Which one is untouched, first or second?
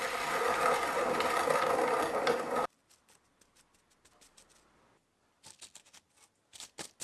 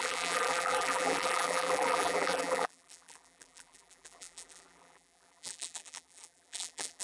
first